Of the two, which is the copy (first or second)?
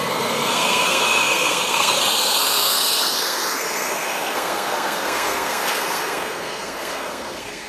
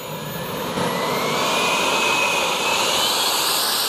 first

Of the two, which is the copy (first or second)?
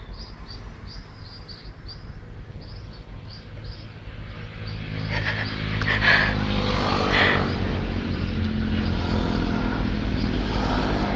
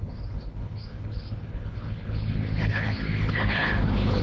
second